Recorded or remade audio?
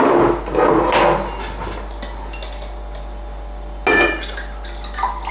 recorded